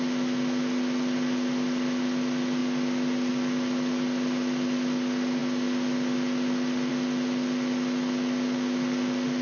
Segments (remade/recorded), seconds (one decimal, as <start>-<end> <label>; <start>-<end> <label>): 0.0-9.4 recorded